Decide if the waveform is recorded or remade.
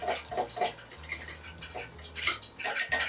recorded